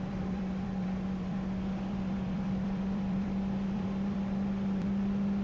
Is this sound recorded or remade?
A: remade